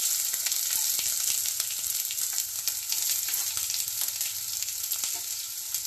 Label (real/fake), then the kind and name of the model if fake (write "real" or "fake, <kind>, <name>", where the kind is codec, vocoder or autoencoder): real